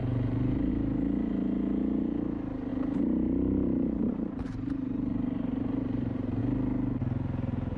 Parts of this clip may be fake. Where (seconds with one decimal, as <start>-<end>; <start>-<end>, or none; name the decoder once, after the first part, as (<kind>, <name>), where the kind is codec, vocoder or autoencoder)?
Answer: 0.0-0.7 (vocoder, BigVGAN v2); 2.7-6.4